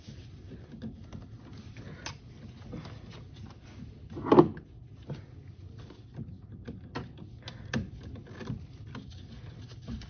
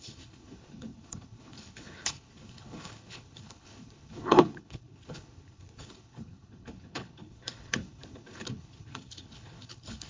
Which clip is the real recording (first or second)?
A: first